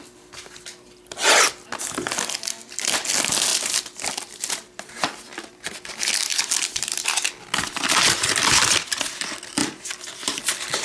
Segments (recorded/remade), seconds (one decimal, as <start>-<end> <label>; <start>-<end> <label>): 0.0-2.6 recorded; 2.6-3.1 remade; 3.1-3.5 recorded; 3.5-5.5 remade; 5.5-9.6 recorded; 9.6-10.4 remade; 10.4-10.8 recorded